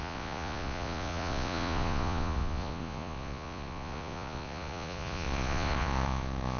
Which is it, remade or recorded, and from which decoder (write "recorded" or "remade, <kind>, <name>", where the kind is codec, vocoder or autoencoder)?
remade, vocoder, Vocos